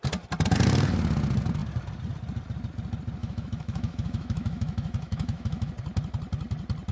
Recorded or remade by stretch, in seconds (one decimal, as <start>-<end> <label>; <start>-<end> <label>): 0.0-3.2 recorded; 3.2-5.7 remade; 5.7-6.9 recorded